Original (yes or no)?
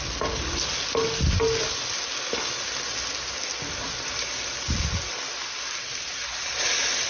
yes